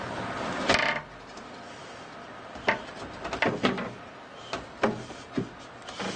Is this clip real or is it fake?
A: real